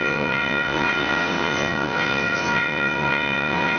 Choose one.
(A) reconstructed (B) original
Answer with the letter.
A